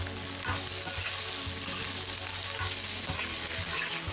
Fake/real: real